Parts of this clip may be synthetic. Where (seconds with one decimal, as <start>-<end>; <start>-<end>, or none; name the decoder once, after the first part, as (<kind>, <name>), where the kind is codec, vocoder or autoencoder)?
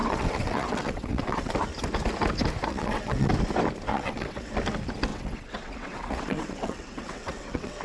0.0-1.5 (vocoder, WaveNeXt); 2.7-3.3; 3.9-4.5; 5.1-7.8